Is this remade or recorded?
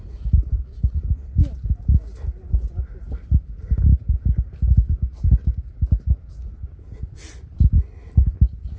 recorded